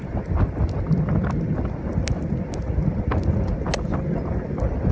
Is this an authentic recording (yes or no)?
yes